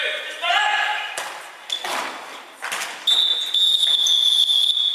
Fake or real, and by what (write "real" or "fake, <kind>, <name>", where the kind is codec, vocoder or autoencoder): real